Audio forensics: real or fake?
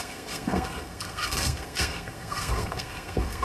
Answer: fake